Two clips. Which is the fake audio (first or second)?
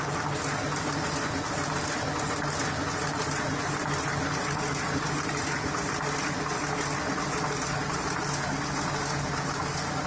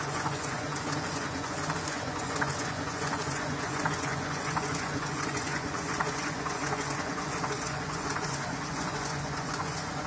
second